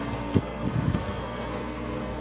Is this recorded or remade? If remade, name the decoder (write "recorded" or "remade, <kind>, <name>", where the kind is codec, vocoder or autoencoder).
remade, codec, SNAC